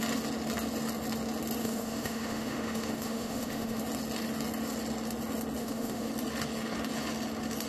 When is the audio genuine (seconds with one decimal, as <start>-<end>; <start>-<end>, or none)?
0.0-1.6; 3.8-5.6; 6.1-7.7